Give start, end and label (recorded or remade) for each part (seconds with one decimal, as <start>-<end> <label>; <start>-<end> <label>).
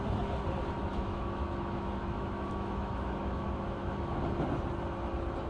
0.0-0.9 recorded; 0.9-4.2 remade; 4.2-5.5 recorded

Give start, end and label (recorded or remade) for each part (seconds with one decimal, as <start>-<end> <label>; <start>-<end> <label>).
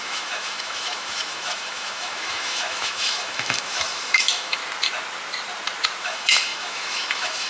0.0-4.6 remade; 4.6-6.0 recorded; 6.0-7.5 remade